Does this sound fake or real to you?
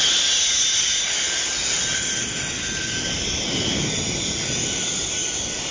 real